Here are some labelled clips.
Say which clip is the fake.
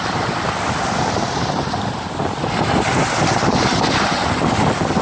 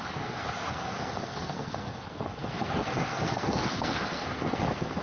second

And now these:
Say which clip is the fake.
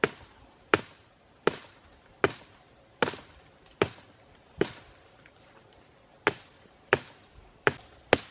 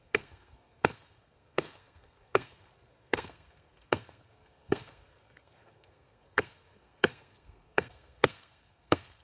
second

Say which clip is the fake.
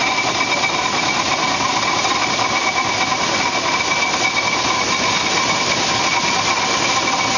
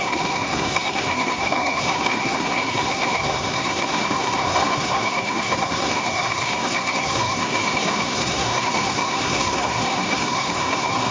second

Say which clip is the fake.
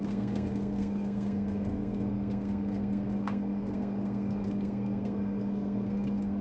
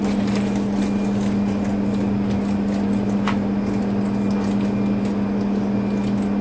first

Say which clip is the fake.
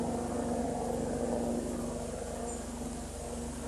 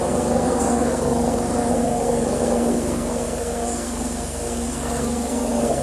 second